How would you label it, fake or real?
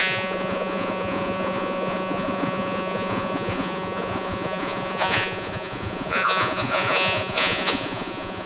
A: fake